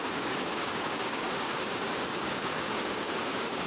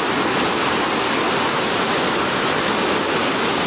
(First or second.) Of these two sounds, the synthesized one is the first